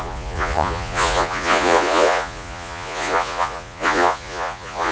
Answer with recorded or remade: remade